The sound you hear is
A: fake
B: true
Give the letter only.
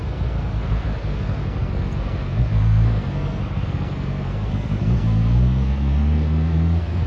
A